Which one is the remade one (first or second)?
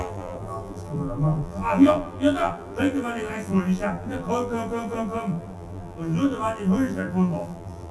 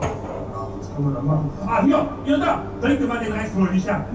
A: first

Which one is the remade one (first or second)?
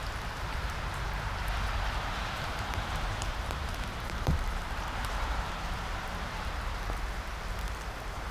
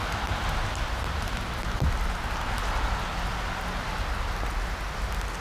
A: first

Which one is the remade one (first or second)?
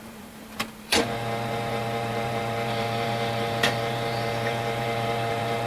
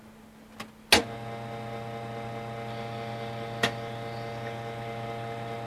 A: first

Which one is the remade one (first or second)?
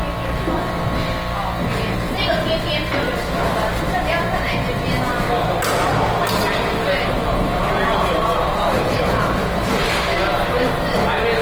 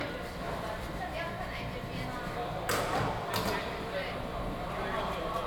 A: second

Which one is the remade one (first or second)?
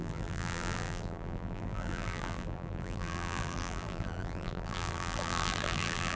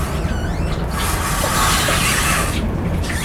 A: first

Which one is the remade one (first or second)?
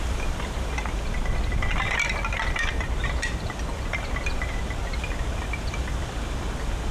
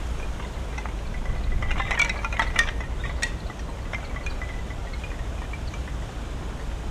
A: first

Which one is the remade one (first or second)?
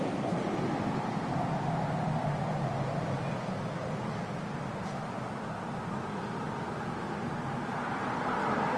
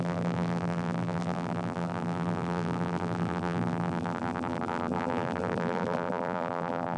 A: second